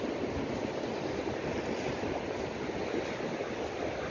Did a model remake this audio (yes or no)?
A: no